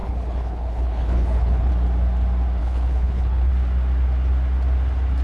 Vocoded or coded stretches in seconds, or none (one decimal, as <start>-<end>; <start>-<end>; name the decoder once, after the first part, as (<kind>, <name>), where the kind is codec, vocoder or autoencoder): 0.0-1.7 (codec, HILCodec); 2.6-3.5